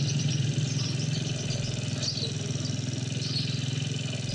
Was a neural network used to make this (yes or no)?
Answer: no